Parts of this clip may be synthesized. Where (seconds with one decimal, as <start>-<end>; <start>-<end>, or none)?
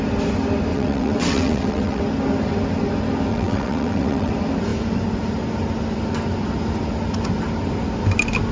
0.7-2.0; 3.3-4.3